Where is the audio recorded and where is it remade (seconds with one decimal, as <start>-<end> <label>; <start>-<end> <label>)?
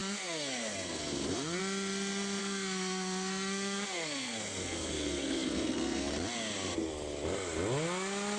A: 0.0-1.6 remade; 1.6-2.4 recorded; 2.4-6.1 remade; 6.1-8.4 recorded